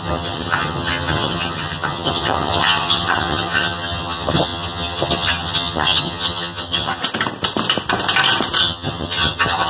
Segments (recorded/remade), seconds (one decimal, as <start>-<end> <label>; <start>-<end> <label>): 0.0-7.0 remade; 7.0-8.6 recorded; 8.6-9.7 remade